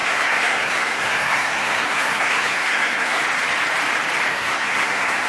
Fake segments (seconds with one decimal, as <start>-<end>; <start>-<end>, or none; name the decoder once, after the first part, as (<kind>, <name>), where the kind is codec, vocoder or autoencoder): 0.0-3.2 (codec, SNAC); 4.3-5.3